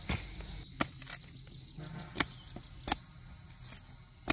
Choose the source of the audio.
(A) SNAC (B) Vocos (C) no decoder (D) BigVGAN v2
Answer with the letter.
C